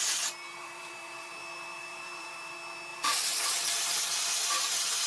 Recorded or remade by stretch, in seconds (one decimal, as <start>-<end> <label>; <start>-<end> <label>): 0.0-0.6 recorded; 0.6-1.3 remade; 1.3-1.8 recorded; 1.8-2.5 remade; 2.5-2.9 recorded; 2.9-4.0 remade; 4.0-5.1 recorded